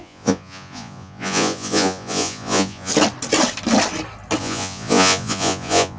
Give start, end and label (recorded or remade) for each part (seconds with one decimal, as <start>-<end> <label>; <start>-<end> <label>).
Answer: 0.0-2.9 remade; 2.9-4.4 recorded; 4.4-6.0 remade